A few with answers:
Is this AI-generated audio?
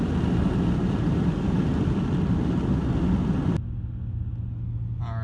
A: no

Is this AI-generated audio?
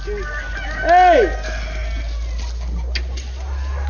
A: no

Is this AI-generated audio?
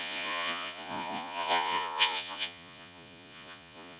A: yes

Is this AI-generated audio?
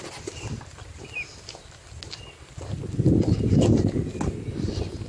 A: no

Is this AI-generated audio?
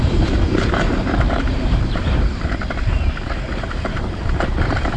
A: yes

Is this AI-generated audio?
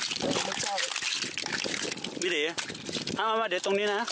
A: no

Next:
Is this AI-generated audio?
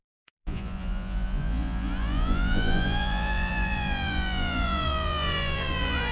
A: yes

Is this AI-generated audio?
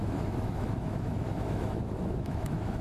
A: yes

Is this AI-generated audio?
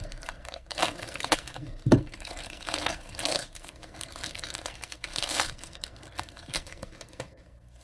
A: yes